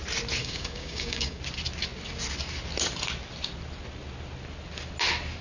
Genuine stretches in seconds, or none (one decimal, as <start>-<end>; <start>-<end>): 0.0-0.4; 1.4-5.4